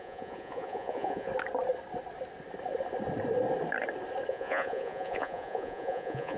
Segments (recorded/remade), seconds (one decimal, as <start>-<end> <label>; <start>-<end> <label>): 0.0-1.3 remade; 1.3-4.3 recorded; 4.3-6.4 remade